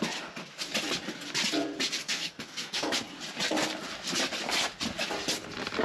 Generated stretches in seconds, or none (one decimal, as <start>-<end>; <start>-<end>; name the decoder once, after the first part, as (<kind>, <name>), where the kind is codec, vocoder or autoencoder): 2.0-2.9 (codec, SNAC)